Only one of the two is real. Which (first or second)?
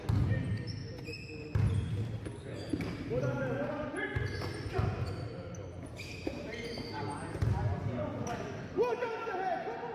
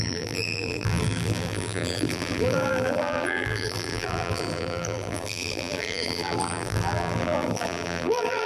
first